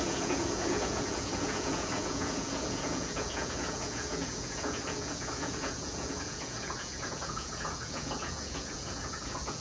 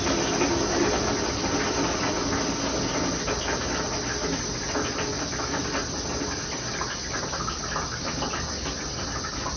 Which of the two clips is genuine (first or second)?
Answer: second